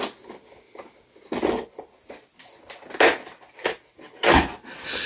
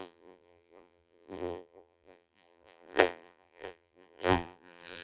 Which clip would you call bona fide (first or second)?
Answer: first